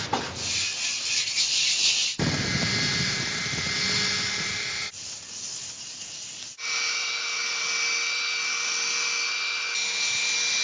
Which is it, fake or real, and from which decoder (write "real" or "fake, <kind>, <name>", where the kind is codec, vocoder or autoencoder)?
real